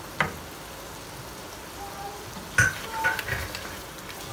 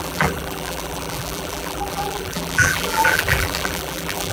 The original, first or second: first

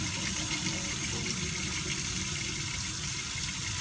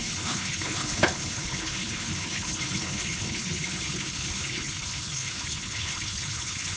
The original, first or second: first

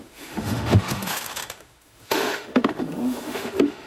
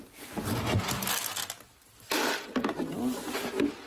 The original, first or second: second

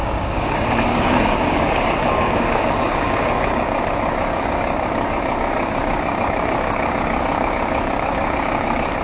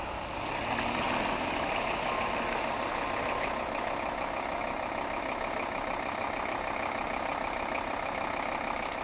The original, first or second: second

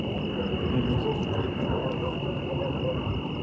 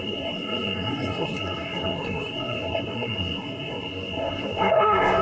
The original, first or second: first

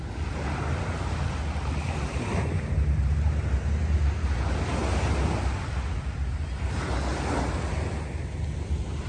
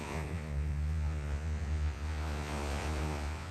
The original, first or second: first